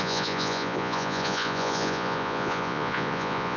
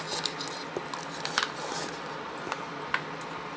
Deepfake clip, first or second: first